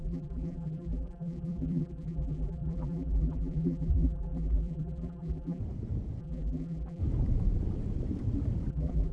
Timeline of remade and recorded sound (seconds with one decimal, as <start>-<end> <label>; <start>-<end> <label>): 0.0-5.6 remade; 5.6-6.2 recorded; 6.2-7.0 remade; 7.0-8.7 recorded; 8.7-9.1 remade